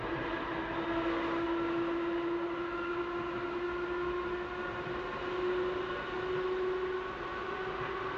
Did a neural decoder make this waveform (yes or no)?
no